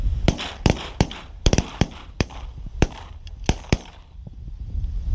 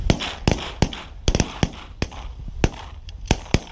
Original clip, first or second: second